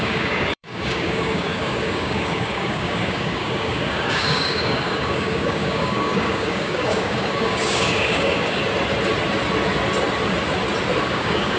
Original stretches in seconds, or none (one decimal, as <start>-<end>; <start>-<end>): 8.6-11.1